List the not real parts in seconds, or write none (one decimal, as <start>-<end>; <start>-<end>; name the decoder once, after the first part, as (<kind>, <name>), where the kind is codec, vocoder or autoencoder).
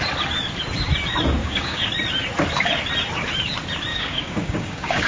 1.4-1.9 (codec, DAC); 3.9-5.1